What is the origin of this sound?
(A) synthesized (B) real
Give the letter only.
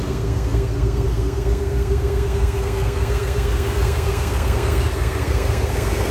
A